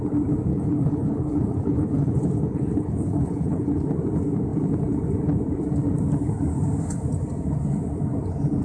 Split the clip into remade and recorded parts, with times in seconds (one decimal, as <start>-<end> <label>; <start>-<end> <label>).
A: 0.0-0.5 recorded; 0.5-3.7 remade; 3.7-8.6 recorded